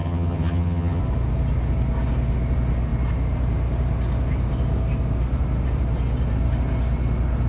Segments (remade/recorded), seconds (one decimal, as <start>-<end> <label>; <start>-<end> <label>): 0.0-1.0 remade; 1.0-7.5 recorded